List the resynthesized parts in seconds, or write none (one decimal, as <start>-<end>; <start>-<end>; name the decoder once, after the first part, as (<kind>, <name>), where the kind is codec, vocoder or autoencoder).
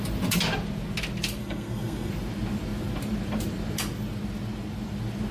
1.4-2.1 (codec, SNAC)